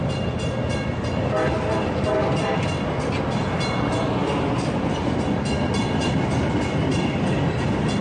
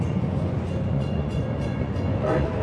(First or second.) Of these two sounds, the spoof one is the second